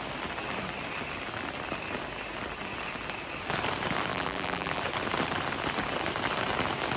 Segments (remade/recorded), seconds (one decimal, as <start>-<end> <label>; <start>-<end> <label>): 0.0-4.1 recorded; 4.1-4.8 remade; 4.8-7.0 recorded